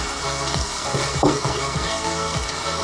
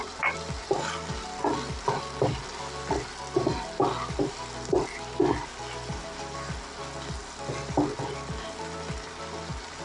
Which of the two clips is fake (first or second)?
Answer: first